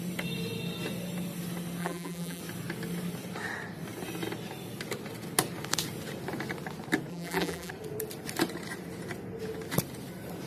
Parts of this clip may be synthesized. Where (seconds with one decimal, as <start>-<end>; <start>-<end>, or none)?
1.8-2.4; 7.1-7.7